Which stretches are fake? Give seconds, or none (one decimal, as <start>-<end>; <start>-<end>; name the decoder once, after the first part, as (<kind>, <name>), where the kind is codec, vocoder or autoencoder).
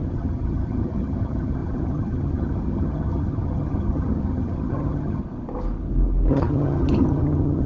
0.0-5.2 (vocoder, HiFi-GAN); 6.3-7.7